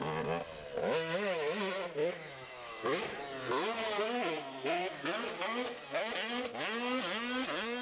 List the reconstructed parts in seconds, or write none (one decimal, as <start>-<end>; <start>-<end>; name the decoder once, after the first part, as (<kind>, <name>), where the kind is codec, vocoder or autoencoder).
0.8-1.6 (autoencoder, DAC-VAE); 2.0-3.0; 4.8-6.1